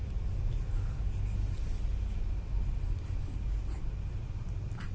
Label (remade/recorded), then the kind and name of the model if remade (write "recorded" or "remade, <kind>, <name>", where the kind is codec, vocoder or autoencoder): recorded